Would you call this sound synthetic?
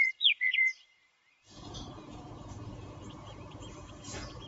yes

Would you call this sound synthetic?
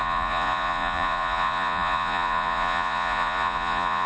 yes